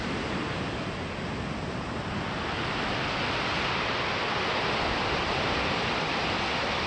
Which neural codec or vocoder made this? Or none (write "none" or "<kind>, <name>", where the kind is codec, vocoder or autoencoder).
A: none